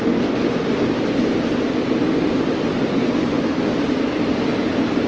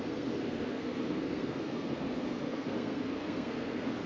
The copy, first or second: second